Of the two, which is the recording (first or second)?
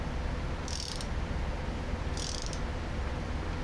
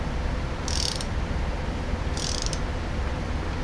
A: first